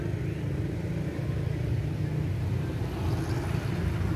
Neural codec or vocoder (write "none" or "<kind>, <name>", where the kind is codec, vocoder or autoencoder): none